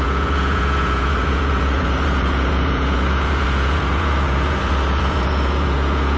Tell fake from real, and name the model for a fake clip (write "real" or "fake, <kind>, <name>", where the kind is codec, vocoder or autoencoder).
fake, vocoder, Vocos